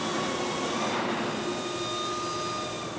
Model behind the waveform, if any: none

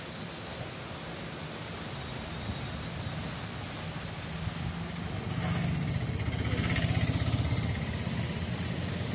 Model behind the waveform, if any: none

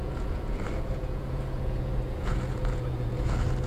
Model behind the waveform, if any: vocoder, Vocos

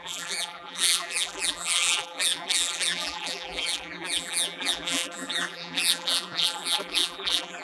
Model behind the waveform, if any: vocoder, BigVGAN v2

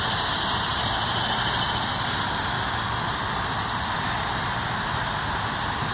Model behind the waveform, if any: none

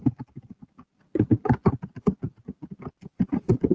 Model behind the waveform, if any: none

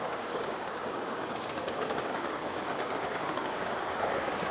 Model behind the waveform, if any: codec, DAC